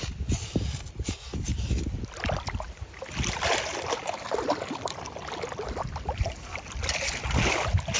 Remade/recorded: recorded